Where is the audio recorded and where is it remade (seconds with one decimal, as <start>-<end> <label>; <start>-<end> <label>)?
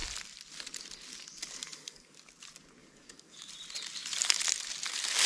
0.0-1.7 recorded; 1.7-2.3 remade; 2.3-2.8 recorded; 2.8-3.5 remade; 3.5-5.3 recorded